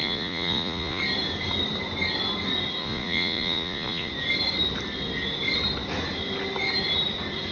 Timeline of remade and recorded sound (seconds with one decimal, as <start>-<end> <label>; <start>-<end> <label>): 0.0-1.0 remade; 1.0-2.8 recorded; 2.8-4.1 remade; 4.1-7.5 recorded